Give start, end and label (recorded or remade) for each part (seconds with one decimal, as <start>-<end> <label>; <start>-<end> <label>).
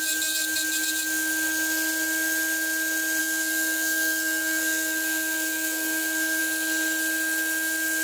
0.0-3.2 recorded; 3.2-6.4 remade; 6.4-8.0 recorded